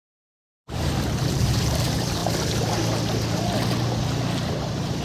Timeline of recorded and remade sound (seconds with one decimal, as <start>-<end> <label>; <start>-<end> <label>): 0.0-2.2 remade; 2.2-4.5 recorded; 4.5-5.0 remade